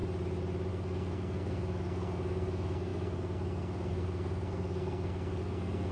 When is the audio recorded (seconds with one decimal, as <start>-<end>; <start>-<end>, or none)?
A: 0.0-0.7